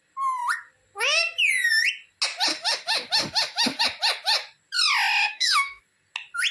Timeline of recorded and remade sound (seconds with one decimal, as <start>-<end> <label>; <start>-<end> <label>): 0.0-2.5 recorded; 2.5-3.8 remade; 3.8-5.2 recorded; 5.2-5.8 remade; 5.8-6.5 recorded